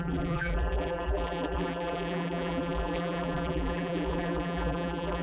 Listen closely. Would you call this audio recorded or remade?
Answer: remade